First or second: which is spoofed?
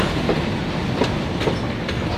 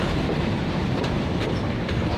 second